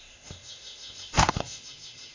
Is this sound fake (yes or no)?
yes